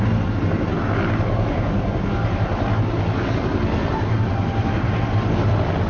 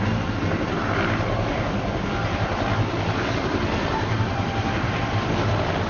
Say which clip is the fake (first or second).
second